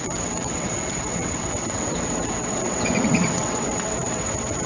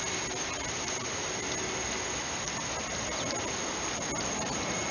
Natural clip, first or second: second